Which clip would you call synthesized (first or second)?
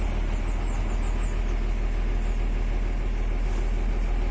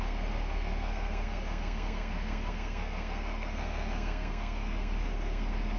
second